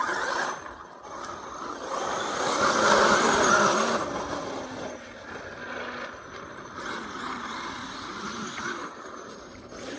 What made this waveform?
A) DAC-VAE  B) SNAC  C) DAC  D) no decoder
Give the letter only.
D